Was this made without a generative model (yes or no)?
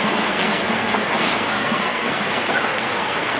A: no